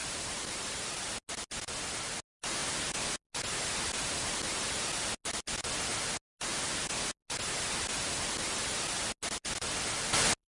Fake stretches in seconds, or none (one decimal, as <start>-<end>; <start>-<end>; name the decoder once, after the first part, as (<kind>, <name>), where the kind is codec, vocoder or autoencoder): 0.0-1.0 (vocoder, BigVGAN v2)